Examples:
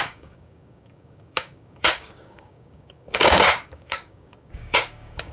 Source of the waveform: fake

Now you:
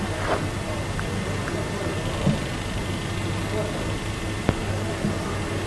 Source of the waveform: real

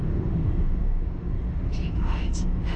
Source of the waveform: fake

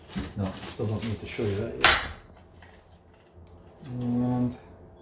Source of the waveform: real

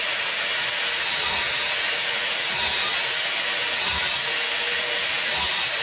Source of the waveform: real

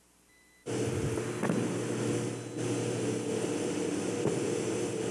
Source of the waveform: real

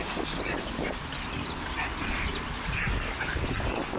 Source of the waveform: real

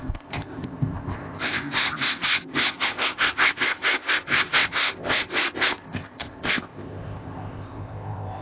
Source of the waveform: fake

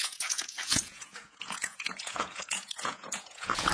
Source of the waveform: fake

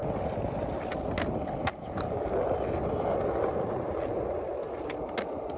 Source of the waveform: real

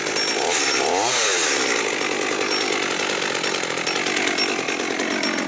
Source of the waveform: real